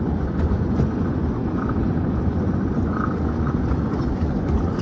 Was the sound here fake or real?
fake